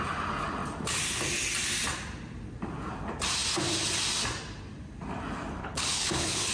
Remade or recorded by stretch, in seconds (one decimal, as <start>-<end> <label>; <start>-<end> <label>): 0.0-5.6 recorded; 5.6-6.5 remade